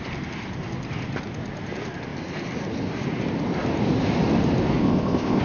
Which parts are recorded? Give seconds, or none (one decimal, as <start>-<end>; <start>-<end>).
0.0-4.8